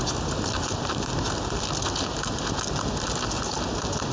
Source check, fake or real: real